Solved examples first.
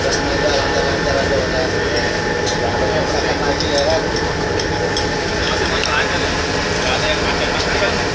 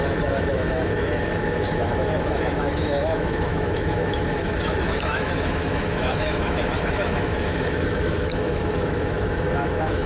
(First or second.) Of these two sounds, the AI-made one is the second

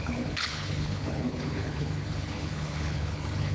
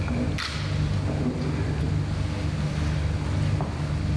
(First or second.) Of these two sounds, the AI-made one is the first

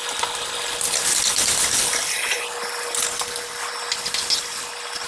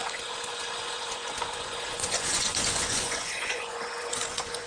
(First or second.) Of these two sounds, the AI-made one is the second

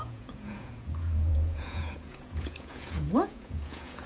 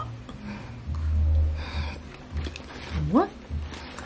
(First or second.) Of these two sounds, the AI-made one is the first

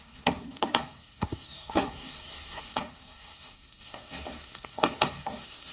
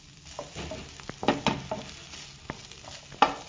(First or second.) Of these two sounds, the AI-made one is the first